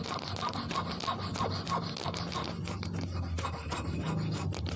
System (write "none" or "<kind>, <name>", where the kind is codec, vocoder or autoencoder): none